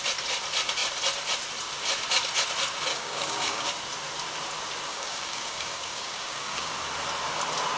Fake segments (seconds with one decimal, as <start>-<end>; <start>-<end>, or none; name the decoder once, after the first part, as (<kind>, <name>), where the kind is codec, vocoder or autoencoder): 2.9-3.7 (codec, DAC); 4.9-6.7